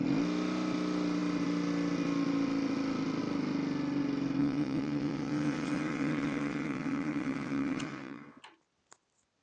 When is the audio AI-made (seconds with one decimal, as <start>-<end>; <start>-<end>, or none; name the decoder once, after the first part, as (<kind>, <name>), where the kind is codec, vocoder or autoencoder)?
4.4-8.4 (vocoder, WaveNeXt)